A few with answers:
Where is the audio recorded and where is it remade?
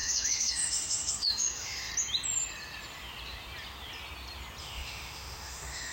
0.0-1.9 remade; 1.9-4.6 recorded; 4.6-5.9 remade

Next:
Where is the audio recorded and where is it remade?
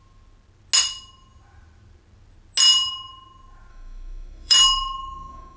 0.0-3.7 recorded; 3.7-5.6 remade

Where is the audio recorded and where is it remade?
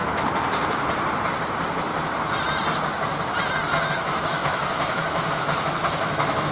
0.0-3.9 recorded; 3.9-6.5 remade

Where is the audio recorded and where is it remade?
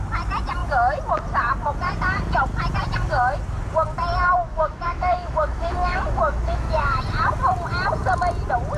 0.0-4.5 recorded; 4.5-7.0 remade; 7.0-8.8 recorded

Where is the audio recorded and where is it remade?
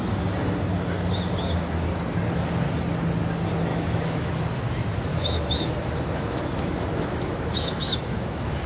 0.0-3.7 recorded; 3.7-4.3 remade; 4.3-5.1 recorded; 5.1-8.7 remade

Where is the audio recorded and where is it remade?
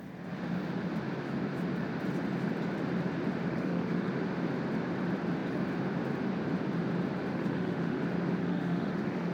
0.0-3.5 recorded; 3.5-4.1 remade; 4.1-7.3 recorded; 7.3-8.0 remade; 8.0-8.4 recorded; 8.4-9.3 remade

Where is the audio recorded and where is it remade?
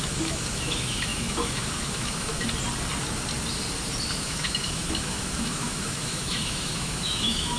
0.0-2.4 remade; 2.4-4.2 recorded; 4.2-7.6 remade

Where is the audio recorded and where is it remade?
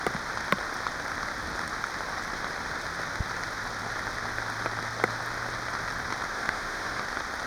0.0-6.3 recorded; 6.3-7.0 remade; 7.0-7.5 recorded